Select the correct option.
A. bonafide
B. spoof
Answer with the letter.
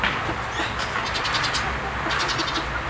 A